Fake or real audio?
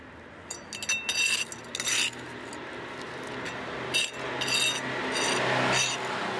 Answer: real